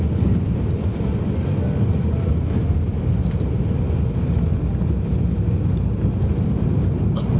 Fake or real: real